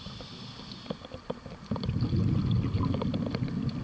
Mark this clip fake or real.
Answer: real